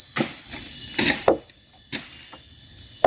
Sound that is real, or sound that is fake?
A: real